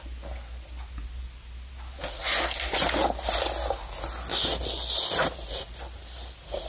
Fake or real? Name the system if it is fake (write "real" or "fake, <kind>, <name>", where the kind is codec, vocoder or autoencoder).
real